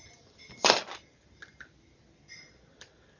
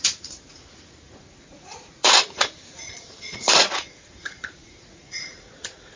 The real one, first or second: first